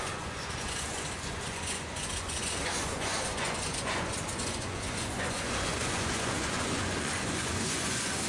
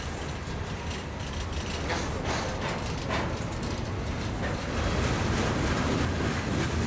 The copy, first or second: first